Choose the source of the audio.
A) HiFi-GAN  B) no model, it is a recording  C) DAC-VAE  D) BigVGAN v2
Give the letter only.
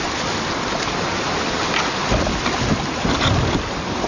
B